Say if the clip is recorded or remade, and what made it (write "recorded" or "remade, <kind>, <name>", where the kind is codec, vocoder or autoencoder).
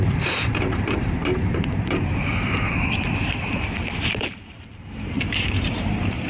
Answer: remade, vocoder, BigVGAN v2